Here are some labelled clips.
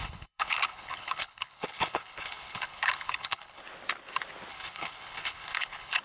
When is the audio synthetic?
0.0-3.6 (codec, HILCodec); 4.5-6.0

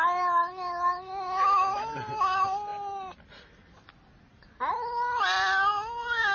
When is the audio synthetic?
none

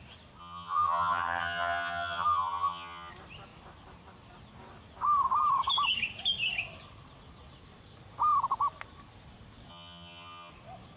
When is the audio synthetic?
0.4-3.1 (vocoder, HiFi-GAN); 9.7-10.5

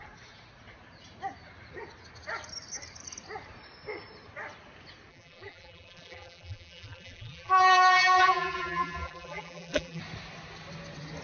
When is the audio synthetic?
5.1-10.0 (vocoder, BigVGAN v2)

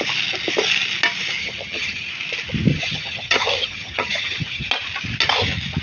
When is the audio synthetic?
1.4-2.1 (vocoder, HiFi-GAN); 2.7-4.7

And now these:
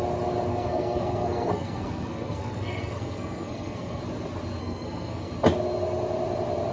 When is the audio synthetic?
0.5-4.0 (codec, SNAC); 4.6-5.3

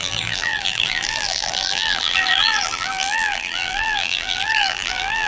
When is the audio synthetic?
0.0-5.3 (vocoder, BigVGAN v2)

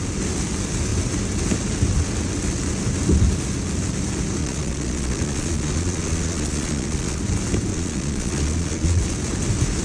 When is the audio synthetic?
4.4-7.2 (vocoder, Vocos); 7.7-9.0